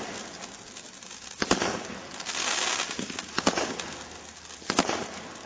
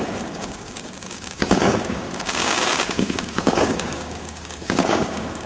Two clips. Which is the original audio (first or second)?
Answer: first